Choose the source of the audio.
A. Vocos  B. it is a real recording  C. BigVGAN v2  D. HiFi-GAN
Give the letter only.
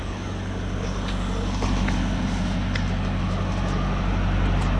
B